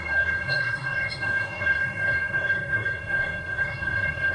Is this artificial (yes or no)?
yes